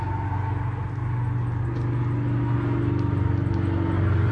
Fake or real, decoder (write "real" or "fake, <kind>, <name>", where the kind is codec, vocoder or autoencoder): real